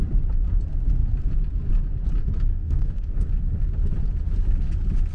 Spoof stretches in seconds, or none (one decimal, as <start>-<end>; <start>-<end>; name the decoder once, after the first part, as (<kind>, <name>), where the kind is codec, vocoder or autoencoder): 2.5-3.3 (codec, SNAC)